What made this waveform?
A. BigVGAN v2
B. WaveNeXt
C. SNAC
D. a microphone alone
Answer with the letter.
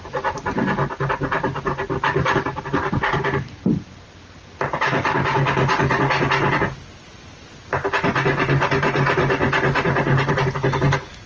D